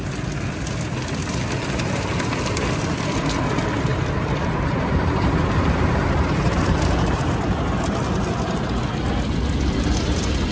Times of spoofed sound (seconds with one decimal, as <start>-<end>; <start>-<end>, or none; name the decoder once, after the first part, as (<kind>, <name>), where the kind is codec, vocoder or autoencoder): 3.9-7.8 (vocoder, BigVGAN v2)